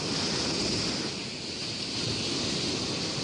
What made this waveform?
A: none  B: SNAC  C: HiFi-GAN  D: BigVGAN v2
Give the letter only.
A